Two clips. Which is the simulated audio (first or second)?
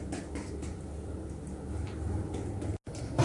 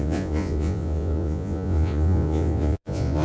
second